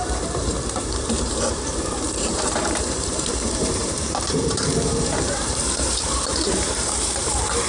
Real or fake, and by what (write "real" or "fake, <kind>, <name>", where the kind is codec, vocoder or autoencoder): fake, vocoder, BigVGAN v2